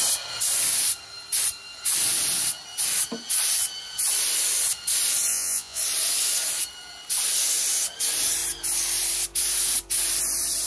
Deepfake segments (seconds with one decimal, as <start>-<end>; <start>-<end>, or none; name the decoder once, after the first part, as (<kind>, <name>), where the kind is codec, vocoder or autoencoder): 5.3-5.8 (vocoder, Vocos)